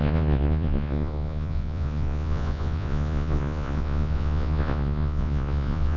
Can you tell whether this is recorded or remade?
remade